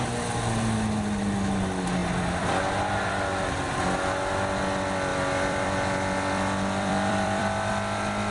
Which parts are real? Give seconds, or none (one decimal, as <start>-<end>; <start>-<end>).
0.0-2.0; 2.6-5.1; 7.7-8.3